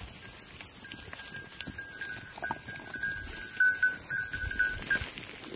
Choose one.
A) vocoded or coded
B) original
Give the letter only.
B